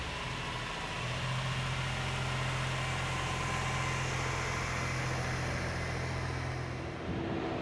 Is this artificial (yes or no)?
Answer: no